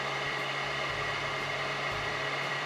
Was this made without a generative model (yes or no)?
no